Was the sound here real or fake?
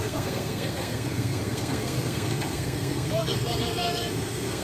fake